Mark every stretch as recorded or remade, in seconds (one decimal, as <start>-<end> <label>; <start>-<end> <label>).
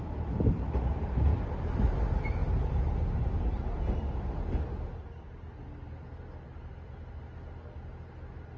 0.0-8.6 recorded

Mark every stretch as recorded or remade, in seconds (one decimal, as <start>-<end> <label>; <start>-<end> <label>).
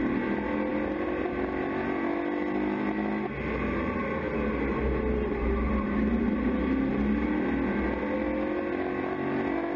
0.0-9.8 recorded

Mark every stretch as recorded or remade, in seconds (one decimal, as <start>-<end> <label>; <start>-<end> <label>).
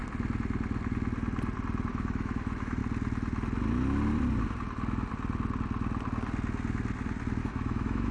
0.0-1.9 recorded; 1.9-2.8 remade; 2.8-7.4 recorded; 7.4-8.1 remade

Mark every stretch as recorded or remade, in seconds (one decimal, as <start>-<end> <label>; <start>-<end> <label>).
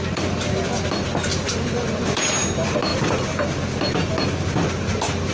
0.0-5.3 recorded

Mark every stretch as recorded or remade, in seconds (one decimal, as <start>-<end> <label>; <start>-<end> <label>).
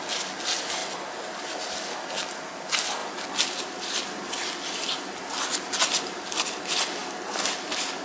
0.0-8.0 recorded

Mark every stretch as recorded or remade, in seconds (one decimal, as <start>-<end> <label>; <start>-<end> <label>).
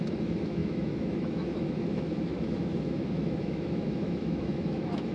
0.0-5.1 remade